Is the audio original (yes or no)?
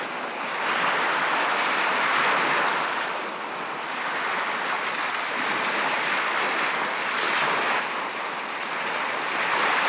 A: yes